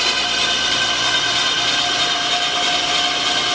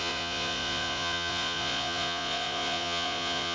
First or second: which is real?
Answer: first